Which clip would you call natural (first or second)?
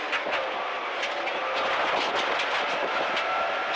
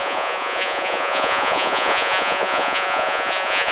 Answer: first